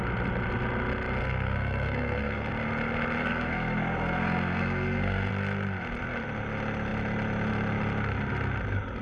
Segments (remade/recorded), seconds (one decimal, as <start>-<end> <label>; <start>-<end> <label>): 0.0-1.2 recorded; 1.2-2.5 remade; 2.5-3.2 recorded; 3.2-5.3 remade; 5.3-9.0 recorded